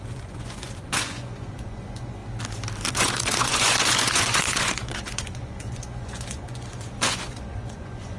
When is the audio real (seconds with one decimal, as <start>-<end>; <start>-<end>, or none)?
2.2-2.9

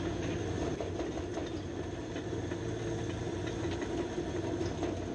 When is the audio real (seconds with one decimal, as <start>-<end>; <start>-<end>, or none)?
0.0-5.1

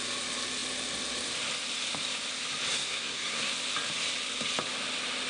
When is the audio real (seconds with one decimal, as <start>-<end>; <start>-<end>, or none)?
0.0-2.7; 3.5-5.3

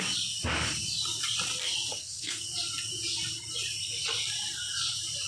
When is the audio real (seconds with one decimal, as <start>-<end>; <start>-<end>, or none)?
0.0-1.9; 2.4-5.3

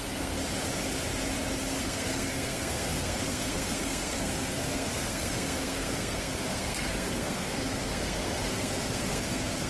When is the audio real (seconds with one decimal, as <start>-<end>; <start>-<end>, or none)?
0.4-1.8

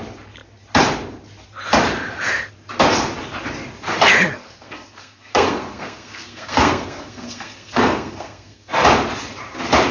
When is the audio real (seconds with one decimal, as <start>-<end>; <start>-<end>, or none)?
0.0-4.4; 8.7-9.9

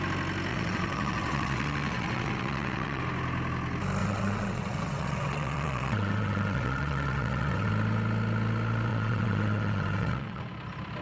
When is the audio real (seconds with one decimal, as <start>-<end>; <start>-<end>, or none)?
0.0-0.5; 3.0-4.0; 7.7-8.9; 10.4-11.0

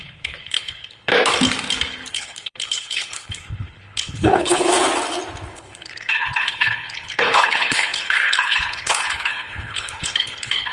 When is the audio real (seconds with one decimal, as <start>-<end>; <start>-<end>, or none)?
1.1-2.1; 4.7-5.5